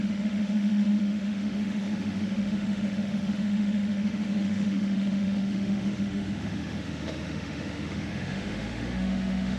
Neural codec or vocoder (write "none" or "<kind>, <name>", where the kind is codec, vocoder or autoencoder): autoencoder, DAC-VAE